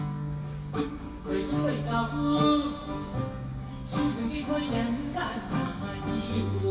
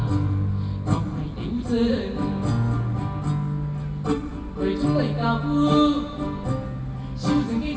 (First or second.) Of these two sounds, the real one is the second